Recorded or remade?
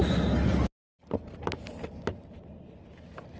recorded